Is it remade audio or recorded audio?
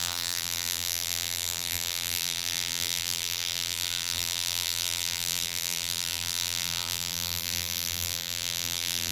remade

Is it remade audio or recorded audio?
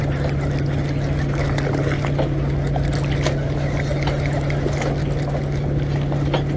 recorded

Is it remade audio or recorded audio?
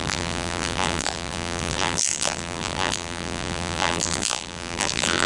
remade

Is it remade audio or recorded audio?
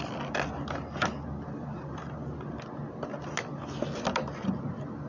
recorded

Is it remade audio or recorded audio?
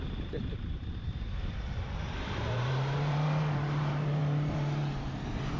remade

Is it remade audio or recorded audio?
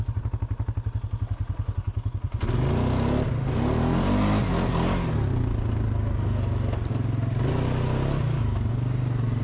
recorded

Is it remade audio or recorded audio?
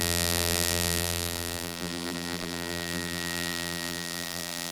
remade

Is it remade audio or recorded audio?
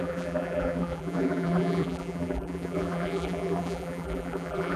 remade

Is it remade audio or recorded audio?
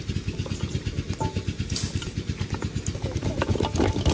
recorded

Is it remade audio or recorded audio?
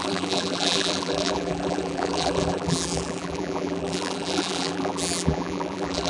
remade